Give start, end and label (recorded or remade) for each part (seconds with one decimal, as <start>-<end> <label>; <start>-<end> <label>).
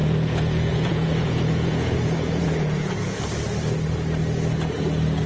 0.0-3.2 remade; 3.2-5.3 recorded